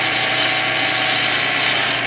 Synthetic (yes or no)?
no